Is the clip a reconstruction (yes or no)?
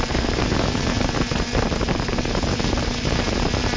no